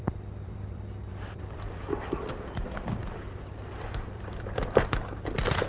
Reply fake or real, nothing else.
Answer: fake